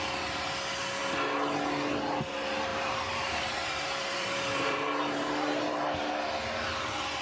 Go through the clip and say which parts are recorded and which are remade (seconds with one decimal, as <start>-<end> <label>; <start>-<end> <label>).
0.0-2.7 recorded; 2.7-6.1 remade; 6.1-7.2 recorded